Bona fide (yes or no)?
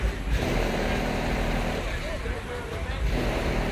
yes